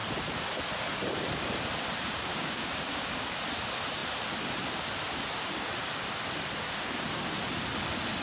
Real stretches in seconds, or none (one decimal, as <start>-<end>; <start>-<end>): 0.0-2.3; 3.3-8.2

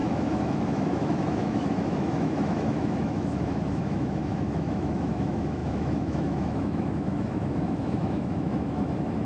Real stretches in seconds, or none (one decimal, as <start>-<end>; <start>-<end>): none

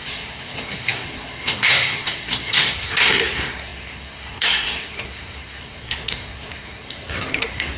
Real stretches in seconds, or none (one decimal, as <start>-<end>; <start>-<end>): none

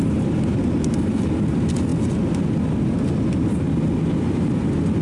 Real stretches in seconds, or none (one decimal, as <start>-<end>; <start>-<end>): 0.0-5.0

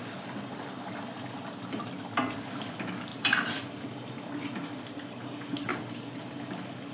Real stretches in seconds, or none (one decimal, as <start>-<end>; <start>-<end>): 0.0-3.1; 3.8-5.7; 6.3-6.9

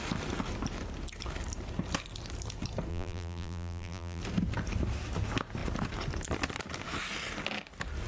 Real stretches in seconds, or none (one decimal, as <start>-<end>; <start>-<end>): 0.0-2.9; 4.2-8.1

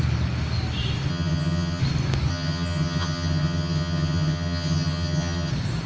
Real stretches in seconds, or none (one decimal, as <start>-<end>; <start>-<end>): 0.0-1.1; 1.8-2.3; 5.5-5.9